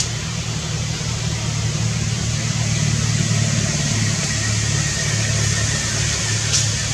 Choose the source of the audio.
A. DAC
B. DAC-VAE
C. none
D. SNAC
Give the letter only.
C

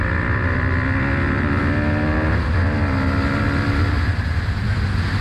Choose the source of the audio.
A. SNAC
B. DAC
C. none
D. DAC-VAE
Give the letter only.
C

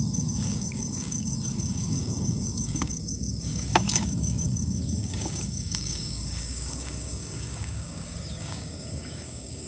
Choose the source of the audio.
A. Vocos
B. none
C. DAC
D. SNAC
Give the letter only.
C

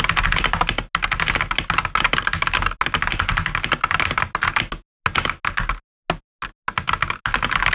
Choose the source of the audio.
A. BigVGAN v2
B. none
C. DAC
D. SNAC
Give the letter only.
B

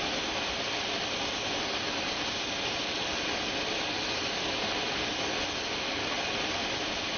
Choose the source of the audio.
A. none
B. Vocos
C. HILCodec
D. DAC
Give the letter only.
A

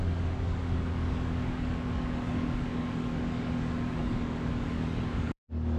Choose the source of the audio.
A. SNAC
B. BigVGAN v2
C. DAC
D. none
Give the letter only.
C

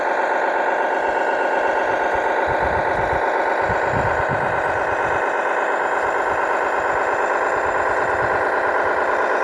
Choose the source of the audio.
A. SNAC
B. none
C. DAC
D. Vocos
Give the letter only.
B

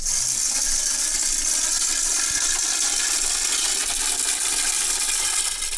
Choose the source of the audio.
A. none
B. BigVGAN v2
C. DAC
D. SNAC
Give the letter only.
A